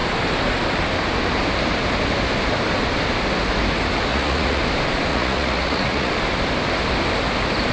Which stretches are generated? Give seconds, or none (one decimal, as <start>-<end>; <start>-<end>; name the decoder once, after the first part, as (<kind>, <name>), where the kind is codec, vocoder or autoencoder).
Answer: 4.1-4.6 (vocoder, Vocos); 5.1-6.1